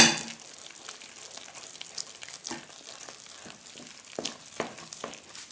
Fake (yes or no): no